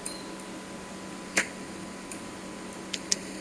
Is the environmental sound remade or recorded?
recorded